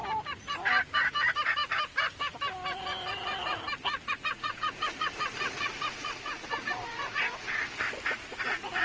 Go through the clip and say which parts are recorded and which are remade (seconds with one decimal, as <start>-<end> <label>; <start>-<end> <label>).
0.0-4.1 recorded; 4.1-7.6 remade; 7.6-8.3 recorded; 8.3-8.8 remade